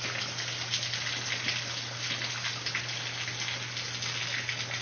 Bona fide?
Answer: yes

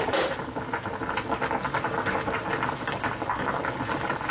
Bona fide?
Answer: yes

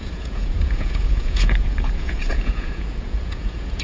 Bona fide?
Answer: no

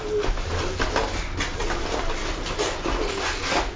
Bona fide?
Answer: yes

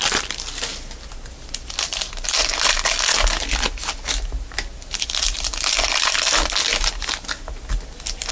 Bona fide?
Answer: yes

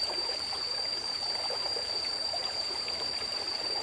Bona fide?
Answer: no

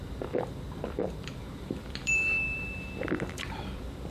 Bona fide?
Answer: no